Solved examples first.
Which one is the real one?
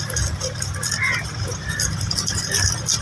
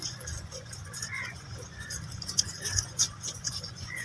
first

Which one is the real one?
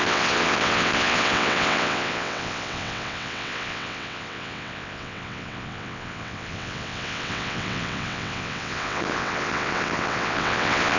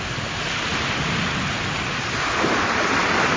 second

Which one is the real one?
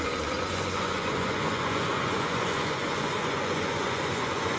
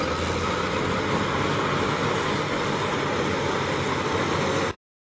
second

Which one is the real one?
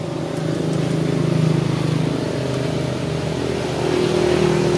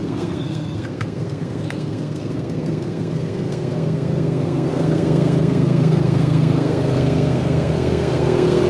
first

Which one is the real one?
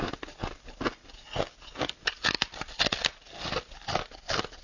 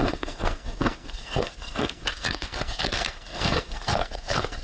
first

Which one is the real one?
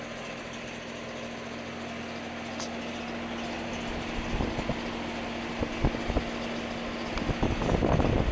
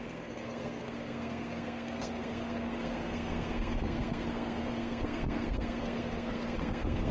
first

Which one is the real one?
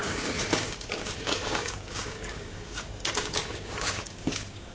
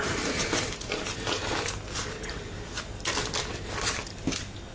second